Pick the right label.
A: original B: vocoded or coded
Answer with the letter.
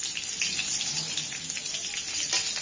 A